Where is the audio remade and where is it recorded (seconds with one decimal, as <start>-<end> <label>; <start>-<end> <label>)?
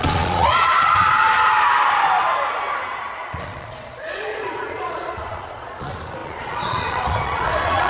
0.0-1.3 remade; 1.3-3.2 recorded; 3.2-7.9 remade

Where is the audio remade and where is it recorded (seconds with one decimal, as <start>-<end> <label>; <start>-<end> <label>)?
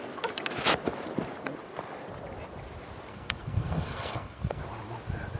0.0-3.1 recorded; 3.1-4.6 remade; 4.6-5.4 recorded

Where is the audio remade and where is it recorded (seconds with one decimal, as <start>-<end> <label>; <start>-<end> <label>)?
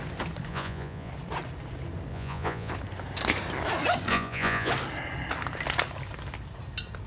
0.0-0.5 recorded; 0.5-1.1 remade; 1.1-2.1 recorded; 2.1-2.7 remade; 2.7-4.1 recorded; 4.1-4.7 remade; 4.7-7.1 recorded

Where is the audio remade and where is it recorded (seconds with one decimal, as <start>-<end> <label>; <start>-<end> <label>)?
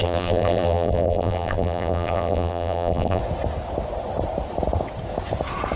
0.0-3.2 remade; 3.2-5.8 recorded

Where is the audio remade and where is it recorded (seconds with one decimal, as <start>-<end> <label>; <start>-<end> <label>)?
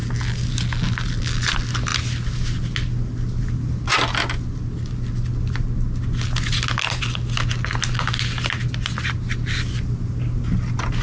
0.0-11.0 recorded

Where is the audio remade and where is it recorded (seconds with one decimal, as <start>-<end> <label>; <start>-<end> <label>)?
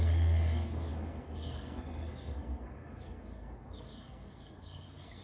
0.0-5.2 remade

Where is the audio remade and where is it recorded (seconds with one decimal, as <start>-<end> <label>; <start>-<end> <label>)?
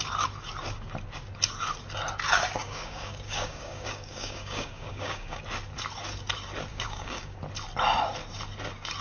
0.0-2.6 recorded; 2.6-5.4 remade; 5.4-6.7 recorded; 6.7-7.4 remade; 7.4-9.0 recorded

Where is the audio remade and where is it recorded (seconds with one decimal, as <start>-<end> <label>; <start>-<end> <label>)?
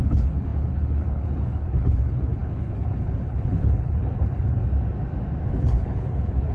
0.0-4.6 remade; 4.6-5.6 recorded; 5.6-6.5 remade